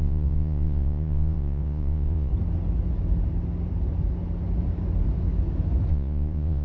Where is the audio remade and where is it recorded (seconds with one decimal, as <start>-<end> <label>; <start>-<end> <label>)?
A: 0.0-2.3 remade; 2.3-5.9 recorded; 5.9-6.6 remade

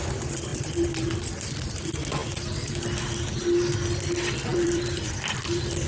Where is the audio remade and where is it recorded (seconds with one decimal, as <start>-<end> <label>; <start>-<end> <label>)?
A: 0.0-0.5 recorded; 0.5-1.5 remade; 1.5-4.5 recorded; 4.5-5.5 remade; 5.5-5.9 recorded

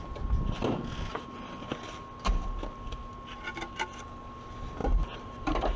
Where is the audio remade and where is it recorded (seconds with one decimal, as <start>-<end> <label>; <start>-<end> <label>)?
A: 0.0-4.8 recorded; 4.8-5.8 remade

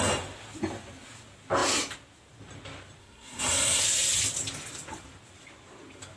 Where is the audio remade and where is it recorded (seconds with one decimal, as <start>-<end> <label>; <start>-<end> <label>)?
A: 0.0-3.0 recorded; 3.0-3.8 remade; 3.8-6.2 recorded